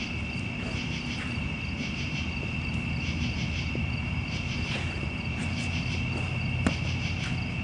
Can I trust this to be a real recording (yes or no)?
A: yes